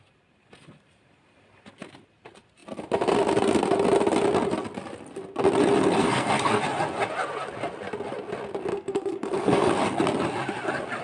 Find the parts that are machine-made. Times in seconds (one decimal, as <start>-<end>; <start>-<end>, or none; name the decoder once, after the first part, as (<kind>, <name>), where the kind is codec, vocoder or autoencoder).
6.0-6.6 (codec, SNAC); 8.7-9.7